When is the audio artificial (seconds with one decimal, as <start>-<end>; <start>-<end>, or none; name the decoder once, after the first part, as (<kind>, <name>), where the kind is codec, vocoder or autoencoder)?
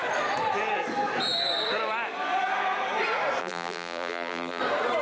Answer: 3.4-4.6 (vocoder, BigVGAN v2)